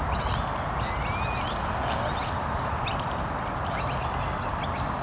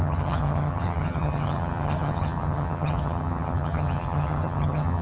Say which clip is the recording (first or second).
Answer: first